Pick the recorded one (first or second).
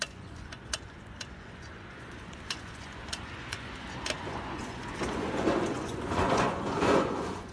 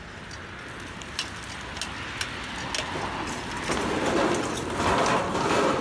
second